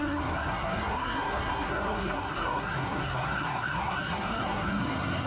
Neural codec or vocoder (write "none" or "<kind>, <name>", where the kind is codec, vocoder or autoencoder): codec, SNAC